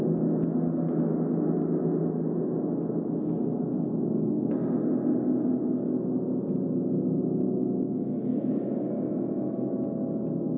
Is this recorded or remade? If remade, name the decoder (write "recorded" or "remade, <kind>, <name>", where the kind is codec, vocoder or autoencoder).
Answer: recorded